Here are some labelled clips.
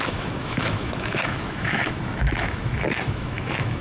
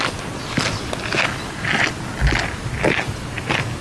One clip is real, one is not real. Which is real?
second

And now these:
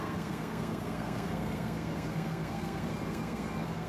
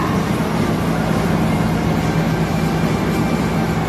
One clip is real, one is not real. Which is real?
second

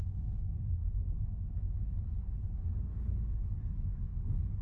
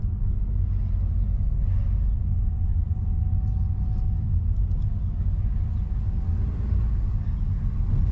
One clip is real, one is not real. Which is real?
second